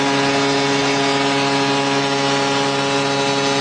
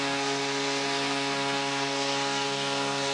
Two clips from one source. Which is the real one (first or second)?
first